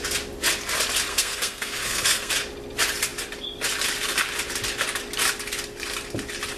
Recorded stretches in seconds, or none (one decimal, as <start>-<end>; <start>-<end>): 0.0-1.1; 2.3-6.6